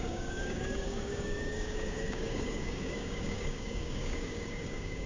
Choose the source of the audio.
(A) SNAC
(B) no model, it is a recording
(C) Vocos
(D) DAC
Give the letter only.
D